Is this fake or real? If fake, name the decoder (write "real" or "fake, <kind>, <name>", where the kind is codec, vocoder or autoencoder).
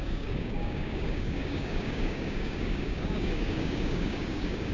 fake, codec, DAC